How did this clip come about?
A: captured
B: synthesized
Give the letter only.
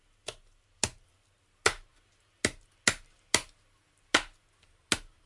A